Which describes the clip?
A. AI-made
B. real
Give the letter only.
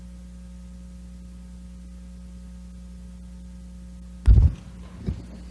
B